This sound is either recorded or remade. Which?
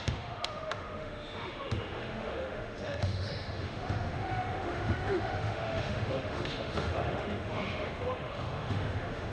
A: remade